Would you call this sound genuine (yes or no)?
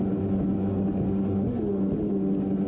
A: yes